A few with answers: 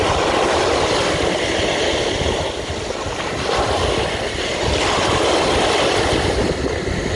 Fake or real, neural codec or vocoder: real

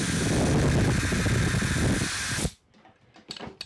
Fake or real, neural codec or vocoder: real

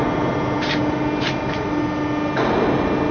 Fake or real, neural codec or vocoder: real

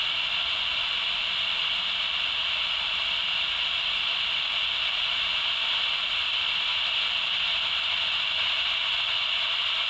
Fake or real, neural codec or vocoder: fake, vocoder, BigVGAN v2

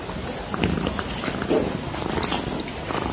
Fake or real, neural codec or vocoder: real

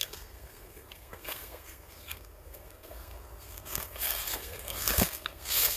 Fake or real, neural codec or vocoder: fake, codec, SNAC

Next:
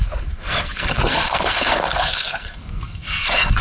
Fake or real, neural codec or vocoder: fake, codec, SNAC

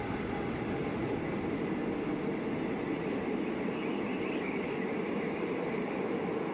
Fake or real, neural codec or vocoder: real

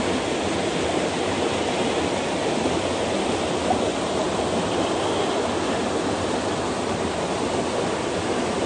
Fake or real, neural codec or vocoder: real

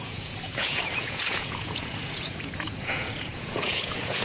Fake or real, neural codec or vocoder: fake, vocoder, Vocos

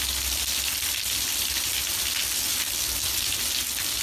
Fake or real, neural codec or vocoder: real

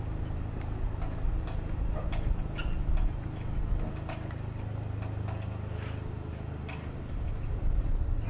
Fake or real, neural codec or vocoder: real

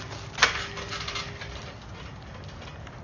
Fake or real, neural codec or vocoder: real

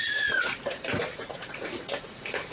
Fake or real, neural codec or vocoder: fake, vocoder, Vocos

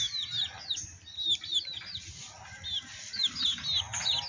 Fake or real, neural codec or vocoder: real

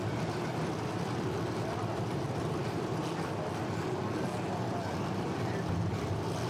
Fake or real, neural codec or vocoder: real